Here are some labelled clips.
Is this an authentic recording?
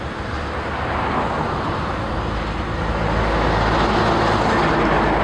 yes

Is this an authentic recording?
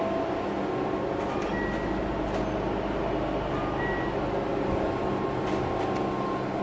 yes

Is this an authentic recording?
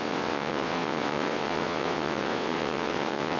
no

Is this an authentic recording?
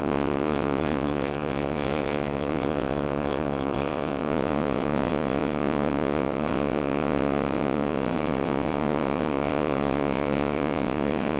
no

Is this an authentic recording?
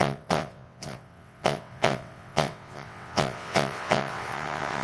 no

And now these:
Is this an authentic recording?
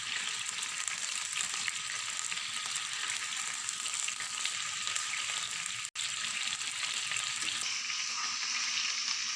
yes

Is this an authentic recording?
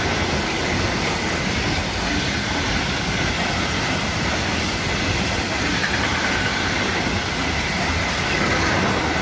yes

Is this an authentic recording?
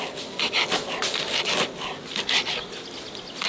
yes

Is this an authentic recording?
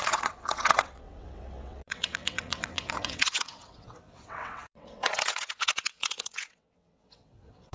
no